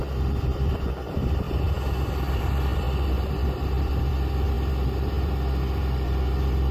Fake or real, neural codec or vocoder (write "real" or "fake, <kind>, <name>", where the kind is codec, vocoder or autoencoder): real